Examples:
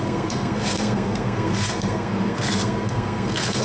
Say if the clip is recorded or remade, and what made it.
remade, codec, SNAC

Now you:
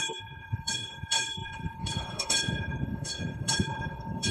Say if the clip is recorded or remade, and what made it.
remade, codec, HILCodec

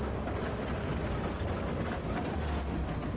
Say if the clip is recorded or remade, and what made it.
recorded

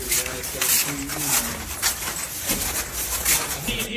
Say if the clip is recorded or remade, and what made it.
remade, vocoder, BigVGAN v2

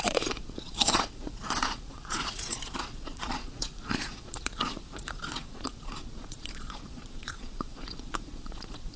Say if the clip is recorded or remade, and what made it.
remade, vocoder, Vocos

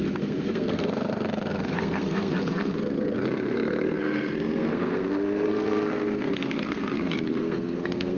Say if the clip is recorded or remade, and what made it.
remade, codec, SNAC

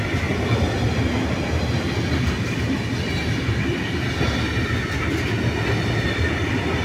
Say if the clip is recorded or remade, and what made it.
recorded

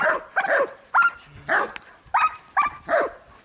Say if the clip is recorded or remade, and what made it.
recorded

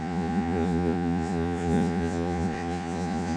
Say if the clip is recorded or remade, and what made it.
remade, vocoder, Vocos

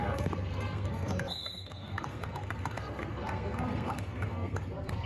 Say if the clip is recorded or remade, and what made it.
remade, codec, SNAC